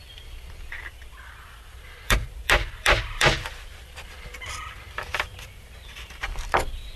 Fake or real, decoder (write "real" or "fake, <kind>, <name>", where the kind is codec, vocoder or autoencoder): fake, vocoder, BigVGAN v2